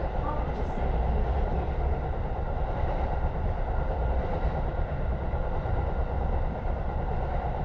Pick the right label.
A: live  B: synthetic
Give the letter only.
A